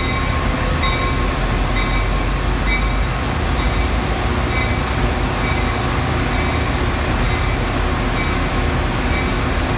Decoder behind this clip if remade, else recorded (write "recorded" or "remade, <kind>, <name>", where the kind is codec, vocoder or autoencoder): recorded